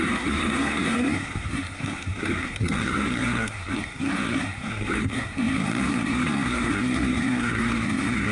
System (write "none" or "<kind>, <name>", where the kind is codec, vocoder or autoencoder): codec, SNAC